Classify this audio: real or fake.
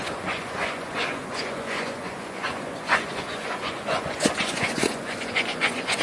fake